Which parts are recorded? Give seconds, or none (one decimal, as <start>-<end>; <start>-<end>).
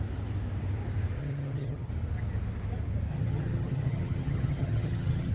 0.0-1.2; 1.9-3.1